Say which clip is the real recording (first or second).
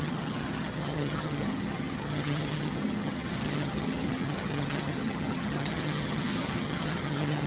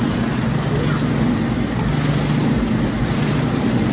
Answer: second